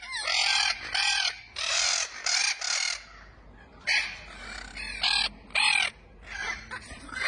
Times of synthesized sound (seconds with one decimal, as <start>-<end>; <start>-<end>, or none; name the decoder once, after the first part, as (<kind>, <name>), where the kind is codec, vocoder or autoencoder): 0.5-2.4 (vocoder, BigVGAN v2); 6.4-7.3